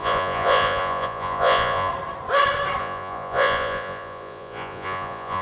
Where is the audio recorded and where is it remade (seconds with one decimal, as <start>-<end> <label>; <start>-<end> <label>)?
0.0-1.9 remade; 1.9-2.8 recorded; 2.8-5.4 remade